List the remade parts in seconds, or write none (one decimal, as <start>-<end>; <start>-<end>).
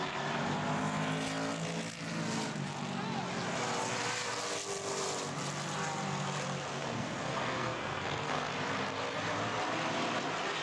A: 6.7-8.5